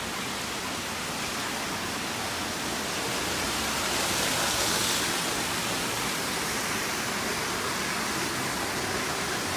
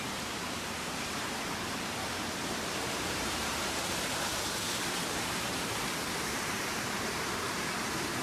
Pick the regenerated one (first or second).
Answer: second